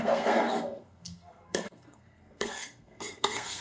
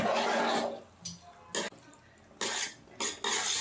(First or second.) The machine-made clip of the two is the first